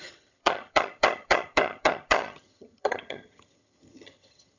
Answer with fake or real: fake